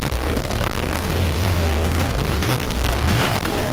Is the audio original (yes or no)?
no